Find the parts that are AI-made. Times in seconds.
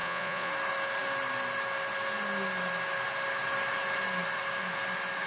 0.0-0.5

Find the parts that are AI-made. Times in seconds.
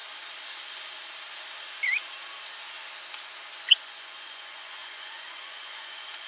3.7-6.3